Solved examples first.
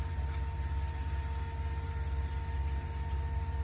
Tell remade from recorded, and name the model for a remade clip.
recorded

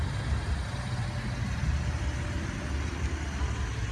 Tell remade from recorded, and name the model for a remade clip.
recorded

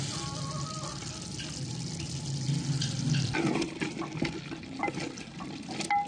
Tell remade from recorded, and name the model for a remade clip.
recorded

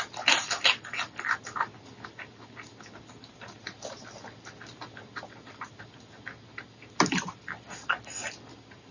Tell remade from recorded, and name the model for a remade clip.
recorded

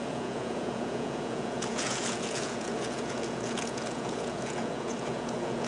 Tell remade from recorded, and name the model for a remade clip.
remade, vocoder, Vocos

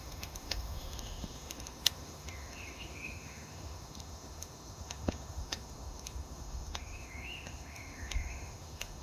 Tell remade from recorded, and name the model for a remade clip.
remade, autoencoder, DAC-VAE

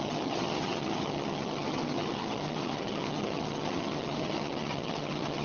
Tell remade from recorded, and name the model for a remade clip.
remade, vocoder, HiFi-GAN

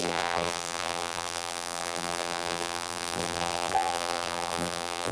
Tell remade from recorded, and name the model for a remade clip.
remade, vocoder, BigVGAN v2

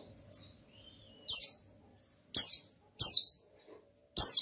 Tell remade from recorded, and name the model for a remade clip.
recorded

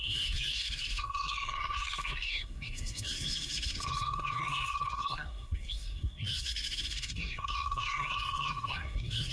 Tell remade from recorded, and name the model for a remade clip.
remade, codec, SNAC